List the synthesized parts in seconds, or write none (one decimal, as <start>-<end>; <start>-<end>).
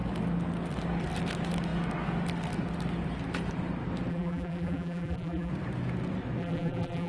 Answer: 4.1-5.5; 6.4-7.1